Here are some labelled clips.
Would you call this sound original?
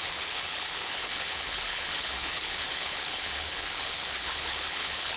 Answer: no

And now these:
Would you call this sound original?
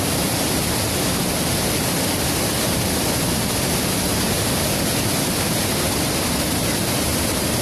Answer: yes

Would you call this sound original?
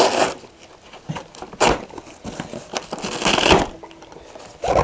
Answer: yes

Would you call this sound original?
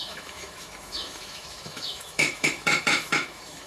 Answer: no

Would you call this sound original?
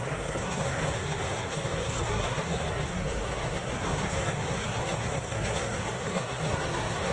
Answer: no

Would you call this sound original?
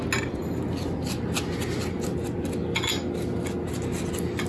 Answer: yes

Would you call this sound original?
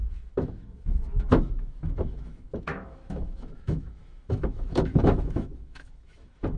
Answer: no